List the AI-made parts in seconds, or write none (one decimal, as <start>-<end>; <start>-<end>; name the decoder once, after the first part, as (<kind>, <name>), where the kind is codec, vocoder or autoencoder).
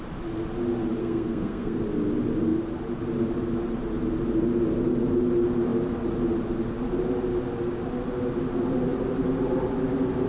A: 1.0-1.8 (codec, SNAC)